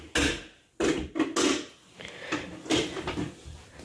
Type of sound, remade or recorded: recorded